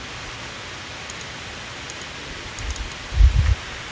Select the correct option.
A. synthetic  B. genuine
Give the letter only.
B